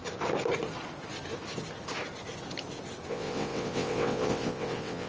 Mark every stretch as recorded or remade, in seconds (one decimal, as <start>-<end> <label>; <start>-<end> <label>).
0.0-3.1 recorded; 3.1-5.1 remade